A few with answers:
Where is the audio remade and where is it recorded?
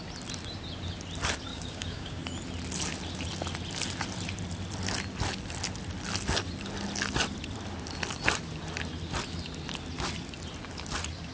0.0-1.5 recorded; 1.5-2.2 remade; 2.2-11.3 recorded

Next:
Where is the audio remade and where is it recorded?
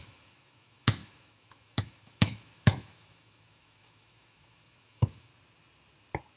0.0-5.3 remade; 5.3-6.4 recorded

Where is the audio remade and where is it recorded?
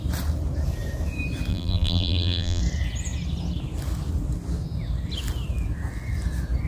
0.0-1.5 recorded; 1.5-2.6 remade; 2.6-6.7 recorded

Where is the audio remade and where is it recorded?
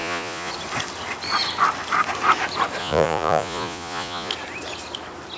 0.0-0.5 remade; 0.5-2.8 recorded; 2.8-4.3 remade; 4.3-5.4 recorded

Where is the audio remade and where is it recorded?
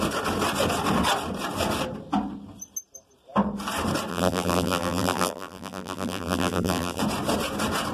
0.0-4.1 recorded; 4.1-7.0 remade; 7.0-7.9 recorded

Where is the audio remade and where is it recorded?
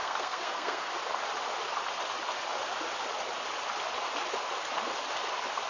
0.0-0.9 remade; 0.9-5.7 recorded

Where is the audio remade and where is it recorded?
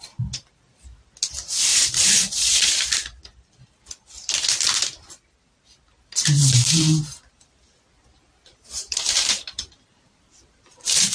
0.0-1.7 recorded; 1.7-2.7 remade; 2.7-6.2 recorded; 6.2-7.7 remade; 7.7-8.5 recorded; 8.5-11.1 remade